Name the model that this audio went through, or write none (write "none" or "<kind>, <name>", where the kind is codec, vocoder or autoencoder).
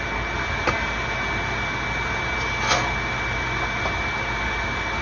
none